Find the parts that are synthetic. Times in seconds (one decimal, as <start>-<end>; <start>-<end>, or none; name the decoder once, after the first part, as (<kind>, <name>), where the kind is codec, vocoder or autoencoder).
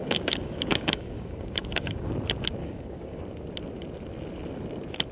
0.0-2.1 (codec, DAC); 2.6-3.2